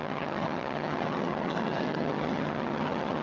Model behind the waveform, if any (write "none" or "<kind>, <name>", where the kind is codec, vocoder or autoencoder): vocoder, HiFi-GAN